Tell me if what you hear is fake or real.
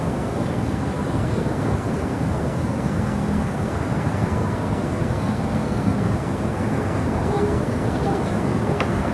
fake